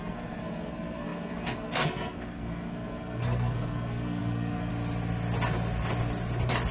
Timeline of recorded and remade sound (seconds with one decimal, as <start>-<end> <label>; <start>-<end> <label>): 0.0-4.7 remade; 4.7-6.7 recorded